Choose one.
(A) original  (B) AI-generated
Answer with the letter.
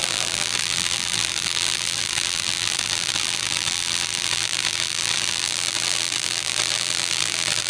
B